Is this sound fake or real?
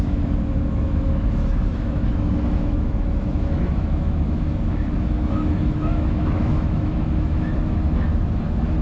fake